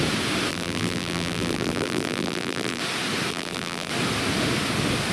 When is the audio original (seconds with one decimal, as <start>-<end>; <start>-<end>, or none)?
0.0-0.5; 2.8-3.3; 3.9-5.1